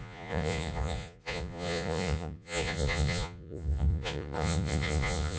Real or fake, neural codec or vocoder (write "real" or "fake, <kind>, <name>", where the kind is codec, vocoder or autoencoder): fake, vocoder, Vocos